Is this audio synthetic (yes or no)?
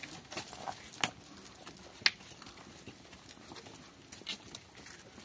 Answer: no